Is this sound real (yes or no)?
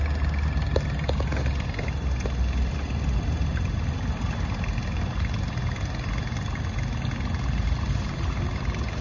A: yes